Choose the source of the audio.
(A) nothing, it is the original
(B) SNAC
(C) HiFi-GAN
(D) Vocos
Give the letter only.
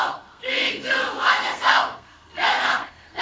B